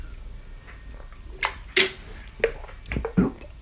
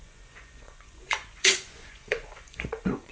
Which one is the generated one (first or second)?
second